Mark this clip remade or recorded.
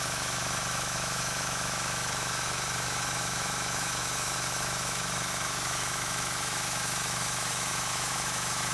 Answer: remade